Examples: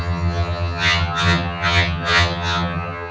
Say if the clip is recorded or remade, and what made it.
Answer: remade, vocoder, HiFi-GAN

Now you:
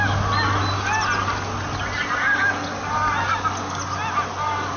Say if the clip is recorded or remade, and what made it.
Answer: recorded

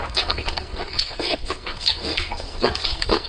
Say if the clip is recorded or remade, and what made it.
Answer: remade, codec, SNAC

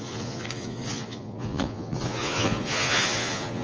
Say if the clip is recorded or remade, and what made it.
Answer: remade, vocoder, Vocos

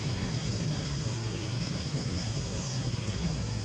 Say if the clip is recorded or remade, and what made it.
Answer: remade, codec, SNAC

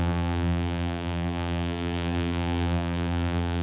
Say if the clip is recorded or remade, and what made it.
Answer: remade, vocoder, BigVGAN v2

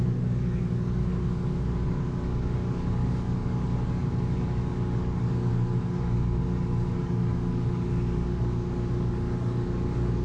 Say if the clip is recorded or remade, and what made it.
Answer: remade, codec, DAC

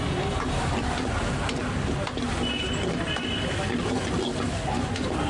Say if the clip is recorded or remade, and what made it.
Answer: recorded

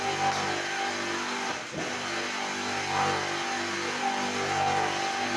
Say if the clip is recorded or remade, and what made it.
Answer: recorded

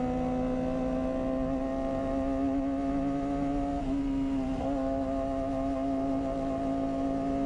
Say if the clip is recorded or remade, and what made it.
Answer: recorded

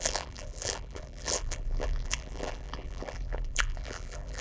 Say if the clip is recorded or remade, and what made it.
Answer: remade, vocoder, BigVGAN v2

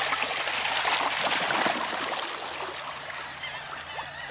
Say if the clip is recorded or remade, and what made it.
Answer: recorded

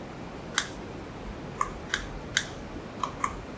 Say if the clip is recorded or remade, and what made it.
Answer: recorded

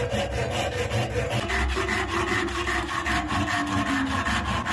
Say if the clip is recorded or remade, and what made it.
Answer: recorded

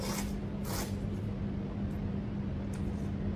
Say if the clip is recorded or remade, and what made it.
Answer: recorded